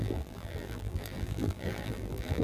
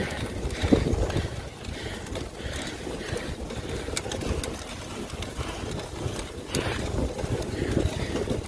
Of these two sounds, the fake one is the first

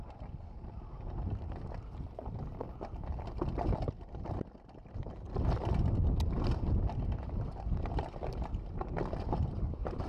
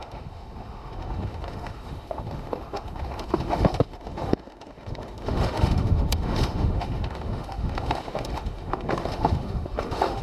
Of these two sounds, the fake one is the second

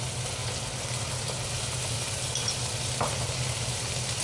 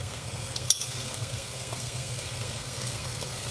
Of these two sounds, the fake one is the second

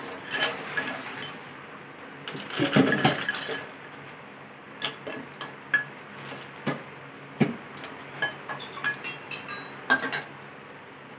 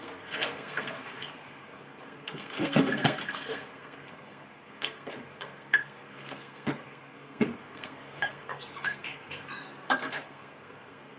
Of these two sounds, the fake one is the second